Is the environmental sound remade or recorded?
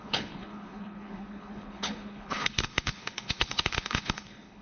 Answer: remade